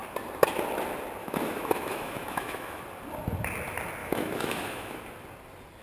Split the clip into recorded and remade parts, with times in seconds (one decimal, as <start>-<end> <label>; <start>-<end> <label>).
0.0-1.2 recorded; 1.2-2.8 remade; 2.8-4.0 recorded; 4.0-5.0 remade; 5.0-5.8 recorded